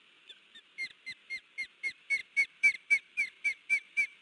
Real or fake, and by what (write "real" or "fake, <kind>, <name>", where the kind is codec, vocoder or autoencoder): fake, vocoder, BigVGAN v2